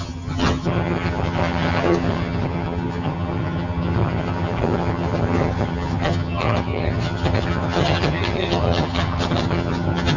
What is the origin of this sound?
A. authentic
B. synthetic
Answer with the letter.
B